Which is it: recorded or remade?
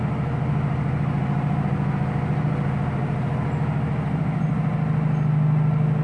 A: recorded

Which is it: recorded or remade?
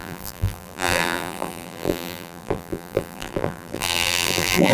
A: remade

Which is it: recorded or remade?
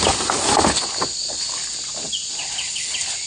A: recorded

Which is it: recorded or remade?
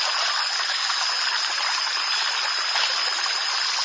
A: recorded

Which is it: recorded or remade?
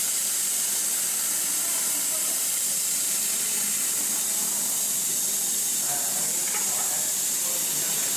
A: recorded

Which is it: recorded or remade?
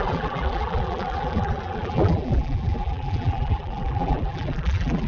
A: remade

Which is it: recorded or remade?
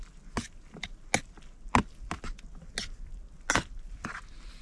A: recorded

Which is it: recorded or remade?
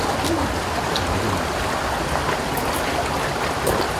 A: recorded